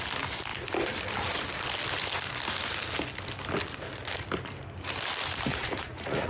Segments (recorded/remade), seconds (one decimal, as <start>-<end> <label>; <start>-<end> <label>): 0.0-5.5 recorded; 5.5-6.3 remade